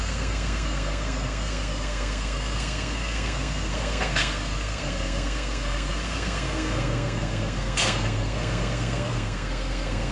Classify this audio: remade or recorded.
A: remade